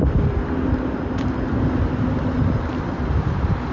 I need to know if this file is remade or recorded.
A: recorded